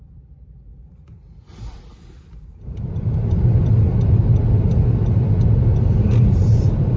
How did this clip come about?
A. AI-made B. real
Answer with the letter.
B